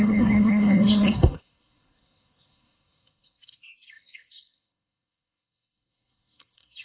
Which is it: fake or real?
fake